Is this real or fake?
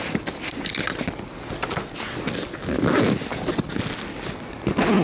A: real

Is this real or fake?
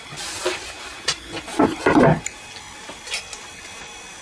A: real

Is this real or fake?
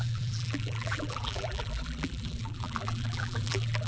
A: fake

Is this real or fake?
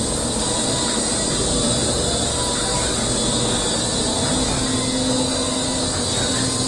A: real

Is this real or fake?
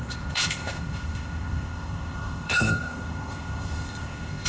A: fake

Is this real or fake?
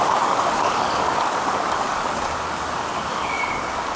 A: fake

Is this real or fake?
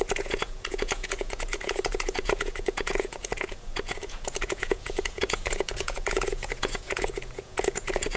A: fake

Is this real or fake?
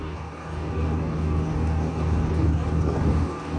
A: fake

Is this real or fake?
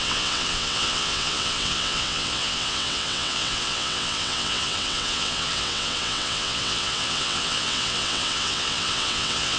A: fake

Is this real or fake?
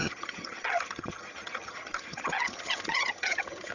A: fake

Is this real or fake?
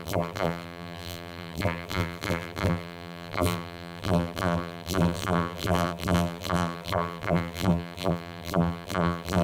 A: fake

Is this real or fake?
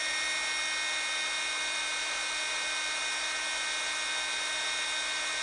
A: real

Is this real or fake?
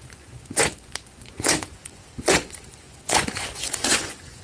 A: fake